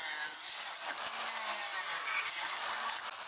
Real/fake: real